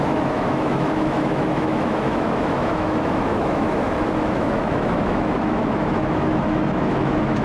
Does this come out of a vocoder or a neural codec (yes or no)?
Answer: yes